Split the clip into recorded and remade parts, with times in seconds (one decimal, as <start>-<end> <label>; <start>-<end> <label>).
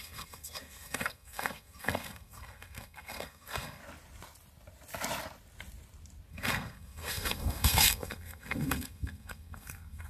0.0-3.8 remade; 3.8-6.3 recorded; 6.3-10.1 remade